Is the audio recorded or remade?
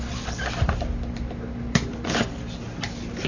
recorded